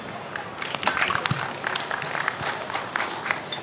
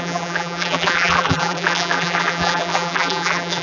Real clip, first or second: first